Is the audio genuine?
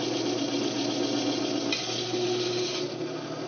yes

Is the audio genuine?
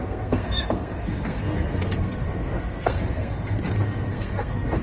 no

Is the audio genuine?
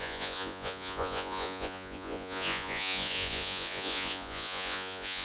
no